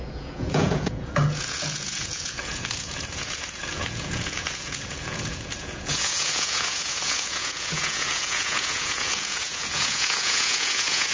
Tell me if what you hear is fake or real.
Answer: fake